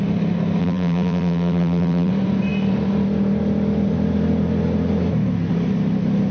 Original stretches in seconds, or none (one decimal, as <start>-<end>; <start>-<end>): 0.0-0.6; 2.1-6.3